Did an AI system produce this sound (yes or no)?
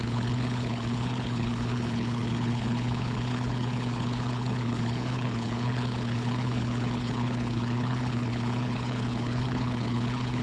yes